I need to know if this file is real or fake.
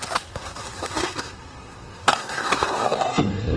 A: fake